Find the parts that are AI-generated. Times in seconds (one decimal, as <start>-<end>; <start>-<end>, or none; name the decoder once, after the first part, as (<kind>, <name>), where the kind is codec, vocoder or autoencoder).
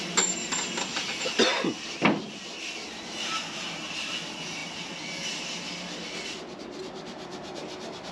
none